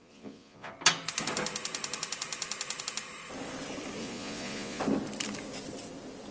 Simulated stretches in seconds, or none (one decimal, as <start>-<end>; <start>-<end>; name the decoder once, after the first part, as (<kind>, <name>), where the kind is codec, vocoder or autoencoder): 0.0-0.7 (vocoder, Vocos); 4.0-4.8